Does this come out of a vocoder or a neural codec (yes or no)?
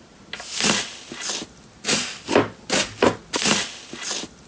no